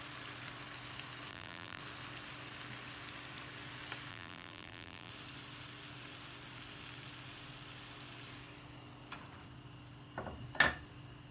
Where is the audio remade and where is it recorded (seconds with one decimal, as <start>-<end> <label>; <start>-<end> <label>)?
0.0-1.3 recorded; 1.3-1.8 remade; 1.8-4.1 recorded; 4.1-5.1 remade; 5.1-11.3 recorded